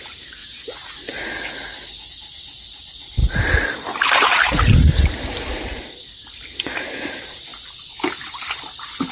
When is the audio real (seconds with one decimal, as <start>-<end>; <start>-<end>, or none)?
0.4-2.1; 3.2-5.8; 7.5-9.1